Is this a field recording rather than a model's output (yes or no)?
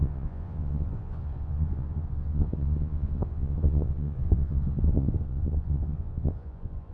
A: no